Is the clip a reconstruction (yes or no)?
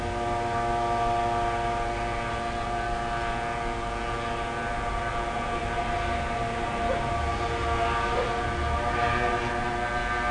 no